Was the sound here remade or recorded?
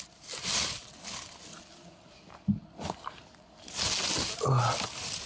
recorded